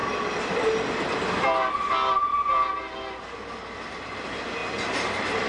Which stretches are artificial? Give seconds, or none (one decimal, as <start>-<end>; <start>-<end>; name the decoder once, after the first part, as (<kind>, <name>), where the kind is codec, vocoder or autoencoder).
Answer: none